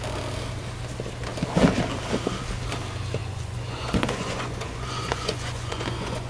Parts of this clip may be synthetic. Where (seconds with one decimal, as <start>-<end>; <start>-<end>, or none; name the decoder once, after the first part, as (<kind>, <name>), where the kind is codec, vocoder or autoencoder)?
3.2-6.3 (vocoder, Vocos)